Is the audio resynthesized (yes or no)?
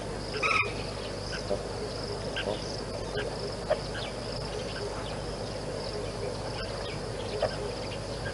no